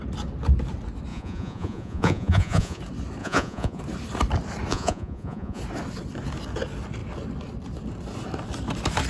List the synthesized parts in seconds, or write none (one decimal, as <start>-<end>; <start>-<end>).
1.1-2.8; 3.2-3.8; 4.7-5.6